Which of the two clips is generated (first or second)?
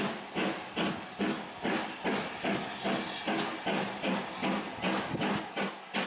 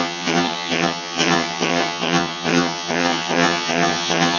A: second